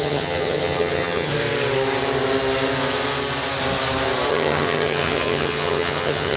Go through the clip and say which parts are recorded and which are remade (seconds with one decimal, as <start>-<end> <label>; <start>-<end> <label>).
0.0-1.3 remade; 1.3-4.3 recorded; 4.3-6.4 remade